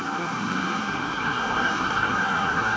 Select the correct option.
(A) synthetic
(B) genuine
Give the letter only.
A